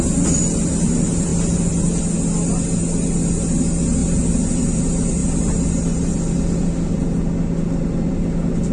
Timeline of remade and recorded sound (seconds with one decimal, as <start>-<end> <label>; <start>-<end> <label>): 0.0-8.7 recorded